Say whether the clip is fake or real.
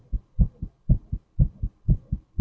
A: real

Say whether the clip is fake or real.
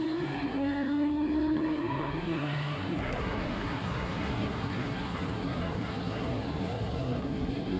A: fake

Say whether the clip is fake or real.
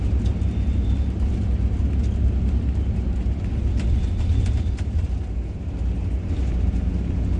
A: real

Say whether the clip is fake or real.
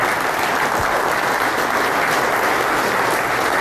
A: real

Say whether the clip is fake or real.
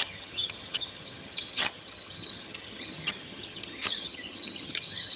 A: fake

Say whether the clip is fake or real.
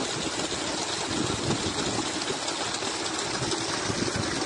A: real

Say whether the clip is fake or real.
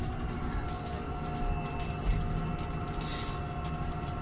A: real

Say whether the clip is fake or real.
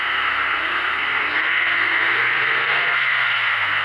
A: fake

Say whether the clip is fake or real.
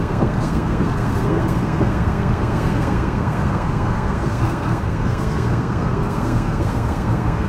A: fake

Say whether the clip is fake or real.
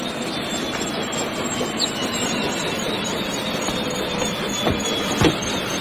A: real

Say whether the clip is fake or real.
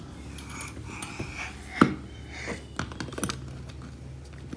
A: real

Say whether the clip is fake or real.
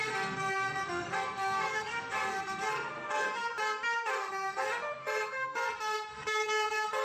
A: fake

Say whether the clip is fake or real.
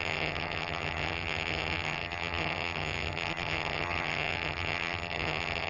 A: fake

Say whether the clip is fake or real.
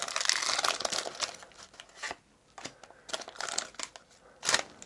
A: real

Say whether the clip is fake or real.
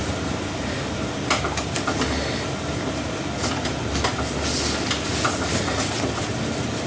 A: real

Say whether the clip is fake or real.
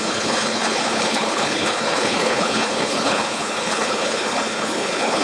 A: fake